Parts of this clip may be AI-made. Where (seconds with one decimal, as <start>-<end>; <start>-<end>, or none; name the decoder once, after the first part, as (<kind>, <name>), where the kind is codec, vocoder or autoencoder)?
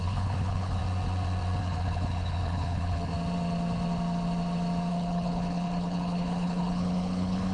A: 0.0-0.8 (codec, HILCodec); 1.6-3.1; 4.9-7.5